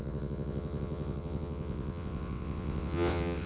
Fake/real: fake